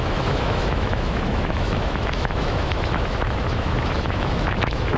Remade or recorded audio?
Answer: remade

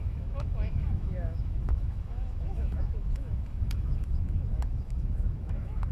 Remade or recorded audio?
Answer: remade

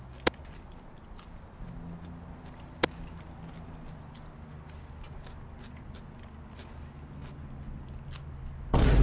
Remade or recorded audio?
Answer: recorded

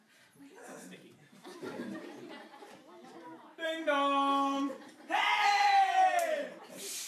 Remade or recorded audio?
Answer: recorded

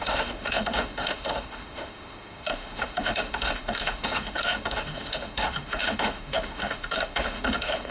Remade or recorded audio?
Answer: remade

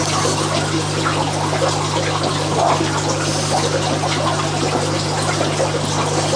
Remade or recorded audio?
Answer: recorded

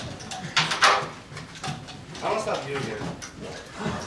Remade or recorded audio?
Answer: recorded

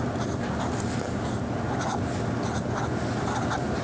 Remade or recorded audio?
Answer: recorded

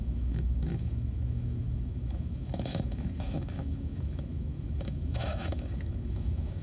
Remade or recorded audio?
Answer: remade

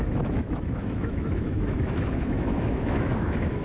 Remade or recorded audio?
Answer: remade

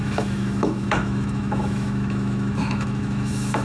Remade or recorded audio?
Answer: remade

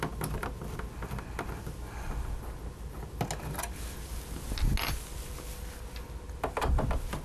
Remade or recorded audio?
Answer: recorded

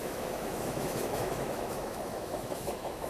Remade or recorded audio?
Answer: remade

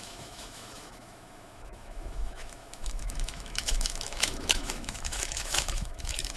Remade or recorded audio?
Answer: remade